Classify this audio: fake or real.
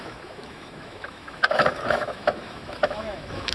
fake